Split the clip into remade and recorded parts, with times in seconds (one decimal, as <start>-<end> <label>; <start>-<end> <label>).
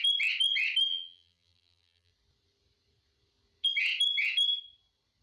0.0-0.9 recorded; 0.9-2.1 remade; 2.1-5.2 recorded